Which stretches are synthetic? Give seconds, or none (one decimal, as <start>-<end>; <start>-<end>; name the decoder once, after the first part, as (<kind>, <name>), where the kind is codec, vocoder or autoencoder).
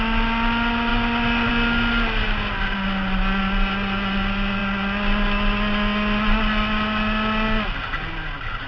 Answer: none